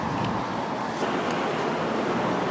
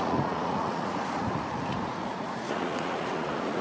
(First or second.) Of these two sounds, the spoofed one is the second